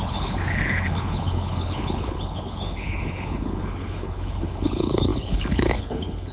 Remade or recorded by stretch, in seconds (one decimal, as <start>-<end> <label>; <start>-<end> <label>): 0.0-6.3 remade